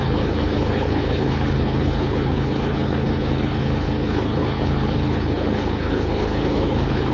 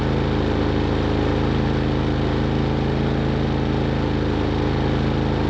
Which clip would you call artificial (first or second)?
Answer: first